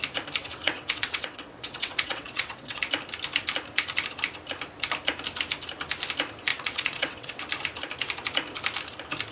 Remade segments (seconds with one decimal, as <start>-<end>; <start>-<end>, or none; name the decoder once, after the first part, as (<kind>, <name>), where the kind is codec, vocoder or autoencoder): 0.4-2.8 (vocoder, WaveNeXt); 6.5-7.4

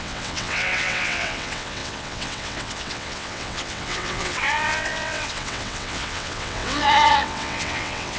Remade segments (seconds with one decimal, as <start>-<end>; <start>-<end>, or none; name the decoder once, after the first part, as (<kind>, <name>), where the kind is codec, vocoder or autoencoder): 0.0-8.2 (vocoder, WaveNeXt)

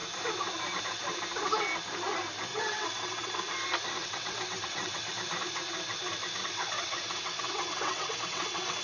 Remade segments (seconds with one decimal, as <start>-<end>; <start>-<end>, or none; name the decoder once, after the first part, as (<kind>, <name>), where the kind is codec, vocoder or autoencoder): 2.5-3.3 (vocoder, WaveNeXt); 4.0-5.1; 6.4-8.8

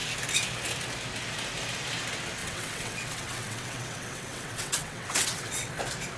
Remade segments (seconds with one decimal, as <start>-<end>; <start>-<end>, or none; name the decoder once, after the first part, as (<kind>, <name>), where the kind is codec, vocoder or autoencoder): 2.4-5.8 (vocoder, WaveNeXt)

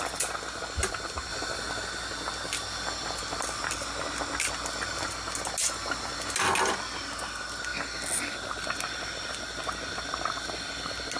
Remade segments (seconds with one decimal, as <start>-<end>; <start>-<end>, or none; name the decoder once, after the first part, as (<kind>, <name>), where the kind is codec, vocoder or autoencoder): none

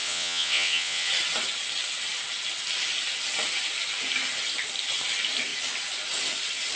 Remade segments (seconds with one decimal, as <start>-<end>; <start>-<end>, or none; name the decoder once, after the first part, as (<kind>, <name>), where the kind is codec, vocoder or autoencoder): 0.0-1.1 (vocoder, WaveNeXt)